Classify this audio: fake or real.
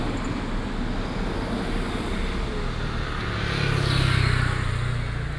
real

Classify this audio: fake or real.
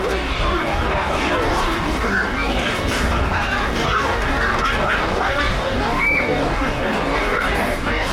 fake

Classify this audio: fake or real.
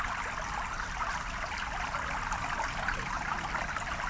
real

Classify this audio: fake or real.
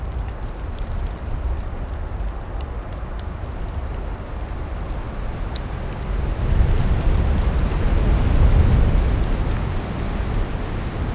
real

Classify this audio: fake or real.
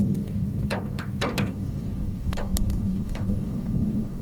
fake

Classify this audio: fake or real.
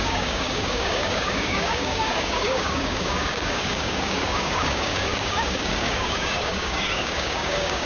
fake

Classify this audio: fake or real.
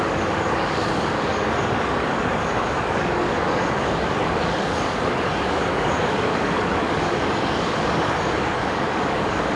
fake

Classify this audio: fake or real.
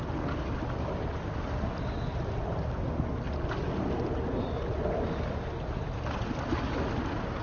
real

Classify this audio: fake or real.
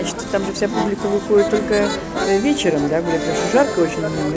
real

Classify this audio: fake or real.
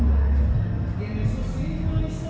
real